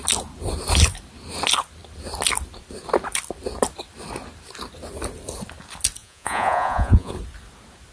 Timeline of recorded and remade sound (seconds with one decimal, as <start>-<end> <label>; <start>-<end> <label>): 0.0-6.0 recorded; 6.0-7.1 remade; 7.1-7.9 recorded